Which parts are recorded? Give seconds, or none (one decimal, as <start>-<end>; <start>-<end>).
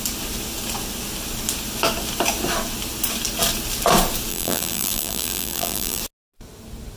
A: 0.0-4.3; 6.0-7.0